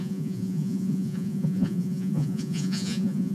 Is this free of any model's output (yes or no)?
no